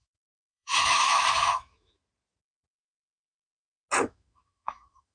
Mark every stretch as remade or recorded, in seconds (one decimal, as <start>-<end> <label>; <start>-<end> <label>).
0.0-2.0 remade; 2.0-4.0 recorded; 4.0-5.1 remade